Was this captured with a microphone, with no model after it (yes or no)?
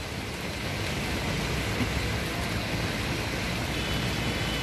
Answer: yes